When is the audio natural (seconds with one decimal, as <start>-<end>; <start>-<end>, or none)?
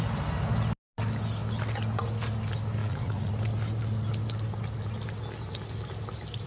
0.0-2.8; 3.3-6.5